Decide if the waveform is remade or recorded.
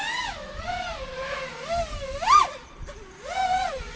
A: recorded